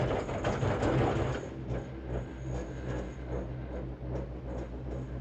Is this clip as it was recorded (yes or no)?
yes